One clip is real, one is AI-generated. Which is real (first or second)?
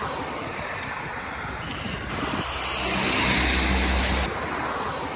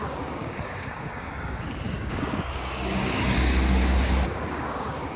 first